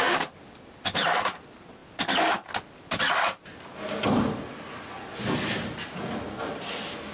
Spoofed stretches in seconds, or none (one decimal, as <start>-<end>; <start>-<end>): none